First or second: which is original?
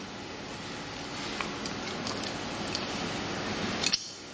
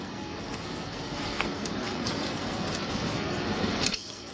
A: first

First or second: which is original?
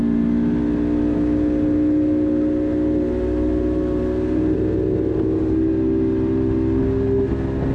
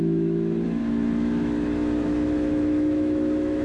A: first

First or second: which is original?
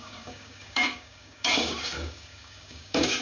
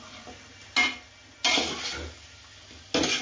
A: second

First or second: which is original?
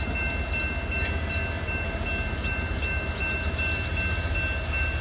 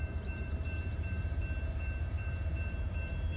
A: first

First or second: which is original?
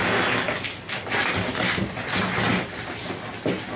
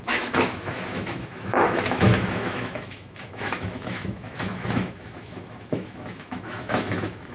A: first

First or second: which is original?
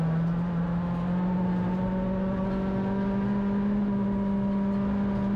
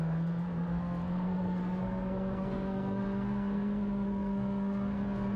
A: first